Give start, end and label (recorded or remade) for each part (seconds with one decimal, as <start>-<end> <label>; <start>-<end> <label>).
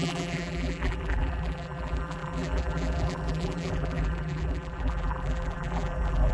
0.0-6.3 remade